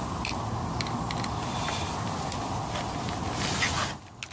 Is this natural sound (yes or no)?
yes